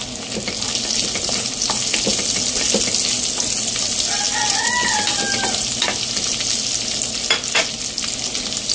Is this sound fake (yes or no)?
no